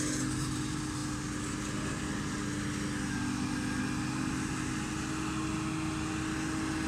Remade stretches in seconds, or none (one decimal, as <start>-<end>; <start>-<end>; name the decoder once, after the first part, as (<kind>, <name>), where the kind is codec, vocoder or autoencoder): none

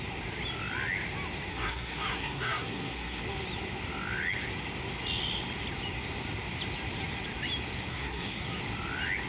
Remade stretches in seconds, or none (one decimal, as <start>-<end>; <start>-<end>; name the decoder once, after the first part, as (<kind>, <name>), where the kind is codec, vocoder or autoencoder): 1.5-3.2 (codec, SNAC); 7.9-8.6

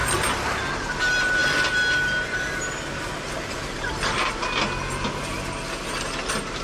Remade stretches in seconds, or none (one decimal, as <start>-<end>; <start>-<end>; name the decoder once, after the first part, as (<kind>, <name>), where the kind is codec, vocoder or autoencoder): none

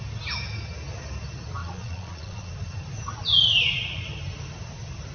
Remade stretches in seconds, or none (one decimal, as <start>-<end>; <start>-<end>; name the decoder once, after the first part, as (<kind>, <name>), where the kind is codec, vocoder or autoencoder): 1.6-2.5 (vocoder, Vocos)

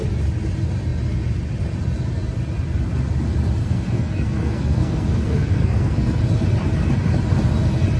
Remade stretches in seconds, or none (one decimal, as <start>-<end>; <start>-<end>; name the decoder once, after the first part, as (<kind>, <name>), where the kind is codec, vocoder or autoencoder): 3.6-6.2 (codec, SNAC)